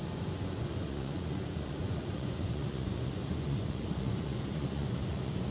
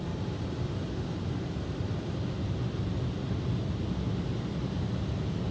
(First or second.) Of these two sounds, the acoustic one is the second